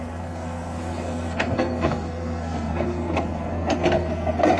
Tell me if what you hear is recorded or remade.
remade